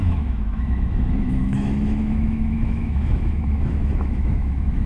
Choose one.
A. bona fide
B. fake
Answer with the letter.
B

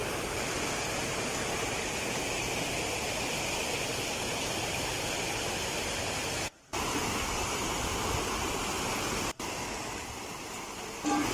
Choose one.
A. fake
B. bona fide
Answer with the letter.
B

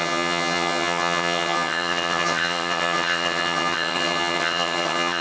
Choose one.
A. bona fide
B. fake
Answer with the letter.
B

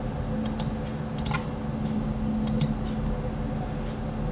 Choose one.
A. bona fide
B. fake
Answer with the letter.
A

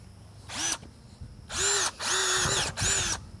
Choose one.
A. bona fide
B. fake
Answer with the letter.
A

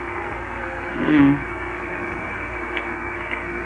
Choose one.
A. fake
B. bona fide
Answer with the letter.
A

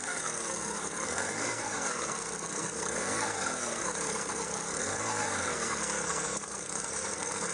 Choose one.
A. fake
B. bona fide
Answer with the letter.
A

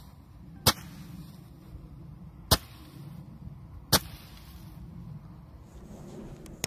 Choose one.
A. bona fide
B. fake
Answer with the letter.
A